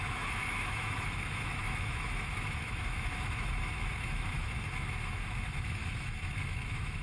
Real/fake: fake